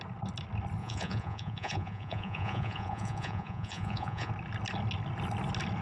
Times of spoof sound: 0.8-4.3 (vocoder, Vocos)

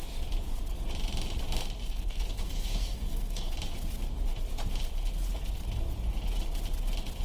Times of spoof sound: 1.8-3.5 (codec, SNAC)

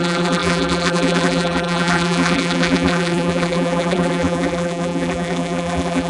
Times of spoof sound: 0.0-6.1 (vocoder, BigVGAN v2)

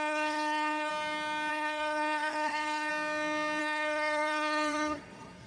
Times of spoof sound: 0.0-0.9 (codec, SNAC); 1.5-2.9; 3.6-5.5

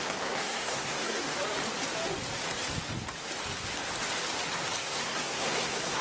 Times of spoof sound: 0.0-1.2 (codec, SNAC); 4.8-6.0

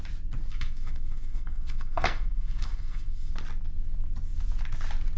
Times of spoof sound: 0.5-3.3 (codec, SNAC)